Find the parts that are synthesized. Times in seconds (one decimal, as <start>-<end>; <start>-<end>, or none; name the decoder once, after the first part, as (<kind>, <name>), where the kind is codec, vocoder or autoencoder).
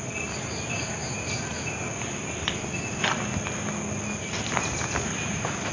none